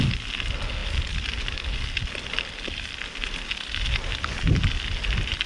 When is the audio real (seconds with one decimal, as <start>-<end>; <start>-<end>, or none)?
0.0-5.5